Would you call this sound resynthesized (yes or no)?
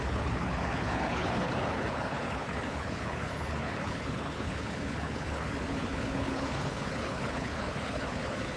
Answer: yes